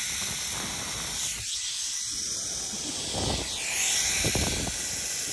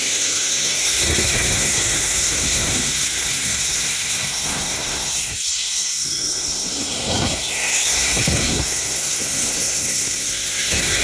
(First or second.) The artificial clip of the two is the second